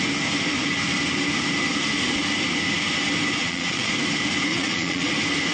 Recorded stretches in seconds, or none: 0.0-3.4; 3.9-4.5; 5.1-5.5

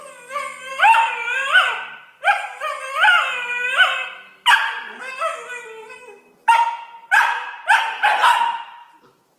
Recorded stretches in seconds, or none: 0.0-0.7; 3.1-7.0; 9.0-9.4

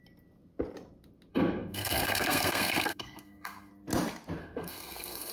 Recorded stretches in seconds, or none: 0.0-1.3; 3.7-4.4

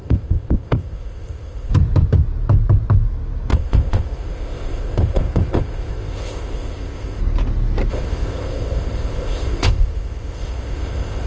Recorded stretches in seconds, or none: 1.7-3.5; 7.2-7.9